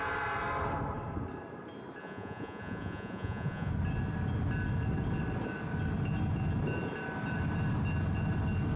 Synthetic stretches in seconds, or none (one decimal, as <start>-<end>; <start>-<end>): 2.0-3.7